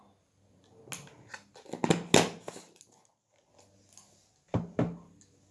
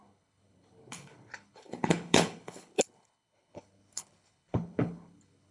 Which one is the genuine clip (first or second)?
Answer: first